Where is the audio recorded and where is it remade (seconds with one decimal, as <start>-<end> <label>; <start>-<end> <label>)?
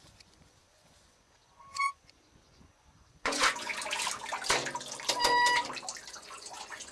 0.0-3.7 remade; 3.7-6.1 recorded; 6.1-6.9 remade